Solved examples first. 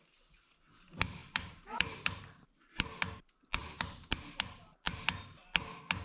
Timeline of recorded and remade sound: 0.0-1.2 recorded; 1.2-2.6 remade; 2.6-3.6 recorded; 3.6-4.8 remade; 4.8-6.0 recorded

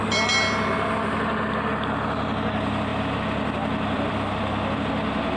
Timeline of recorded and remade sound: 0.0-2.9 recorded; 2.9-4.9 remade; 4.9-5.4 recorded

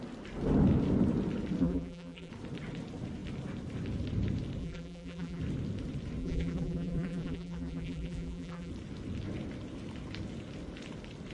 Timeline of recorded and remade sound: 0.0-1.6 recorded; 1.6-2.3 remade; 2.3-4.6 recorded; 4.6-5.4 remade; 5.4-6.2 recorded; 6.2-8.7 remade; 8.7-11.3 recorded

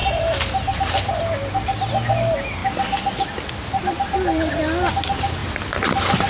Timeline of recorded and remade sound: 0.0-6.3 remade

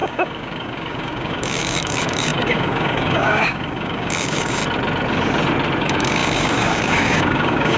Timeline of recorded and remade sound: 0.0-4.6 remade; 4.6-5.8 recorded; 5.8-7.8 remade

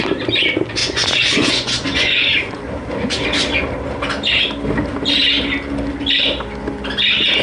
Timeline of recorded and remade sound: 0.0-0.8 recorded; 0.8-2.6 remade; 2.6-7.4 recorded

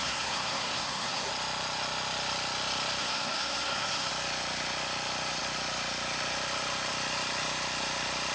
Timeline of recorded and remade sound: 0.0-1.3 remade; 1.3-3.0 recorded; 3.0-4.1 remade; 4.1-8.3 recorded